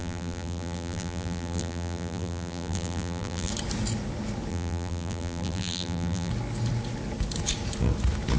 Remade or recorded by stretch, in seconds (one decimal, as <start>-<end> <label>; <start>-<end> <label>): 0.0-3.5 remade; 3.5-4.5 recorded; 4.5-6.3 remade; 6.3-8.4 recorded